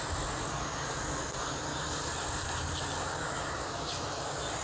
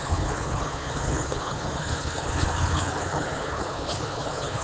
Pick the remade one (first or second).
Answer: second